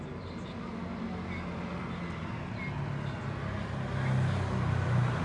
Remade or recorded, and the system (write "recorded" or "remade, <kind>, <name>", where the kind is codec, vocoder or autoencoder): recorded